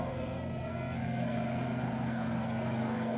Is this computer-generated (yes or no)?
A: yes